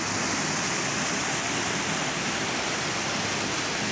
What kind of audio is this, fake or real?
real